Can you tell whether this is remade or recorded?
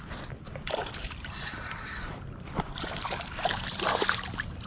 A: remade